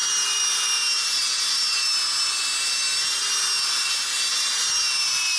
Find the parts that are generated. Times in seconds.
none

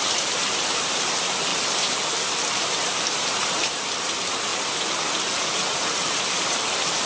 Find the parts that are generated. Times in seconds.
0.0-1.5; 2.5-4.5; 5.5-7.1

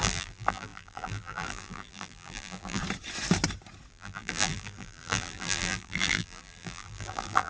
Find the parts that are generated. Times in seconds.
0.0-2.8; 3.9-7.5

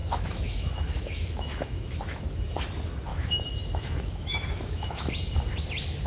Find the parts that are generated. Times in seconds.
0.0-2.2; 3.1-5.1

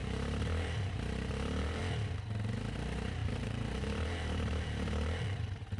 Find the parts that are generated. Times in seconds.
0.0-1.8; 3.2-5.8

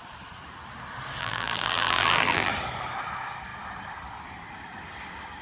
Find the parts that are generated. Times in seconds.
1.2-2.5

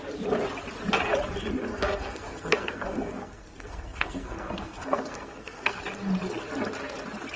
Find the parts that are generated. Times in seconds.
1.7-5.8